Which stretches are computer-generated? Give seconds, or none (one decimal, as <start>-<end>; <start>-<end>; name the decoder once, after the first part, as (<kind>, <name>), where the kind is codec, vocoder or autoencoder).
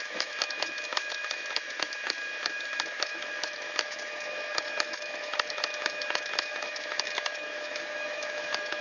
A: 0.0-8.8 (autoencoder, DAC-VAE)